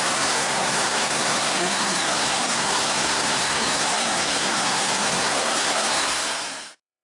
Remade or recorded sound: remade